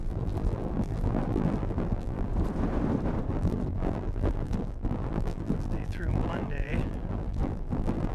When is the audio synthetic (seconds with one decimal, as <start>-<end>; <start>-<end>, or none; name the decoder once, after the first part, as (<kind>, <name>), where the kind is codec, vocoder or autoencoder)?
0.0-2.3 (vocoder, BigVGAN v2); 3.3-8.1